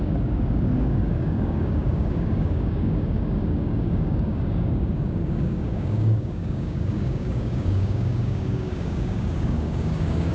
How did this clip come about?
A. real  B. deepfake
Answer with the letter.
B